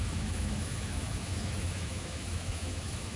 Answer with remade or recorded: remade